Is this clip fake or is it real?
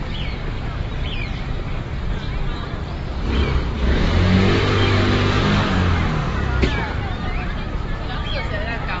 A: real